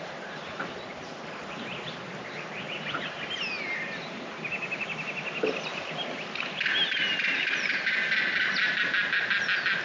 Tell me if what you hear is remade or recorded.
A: recorded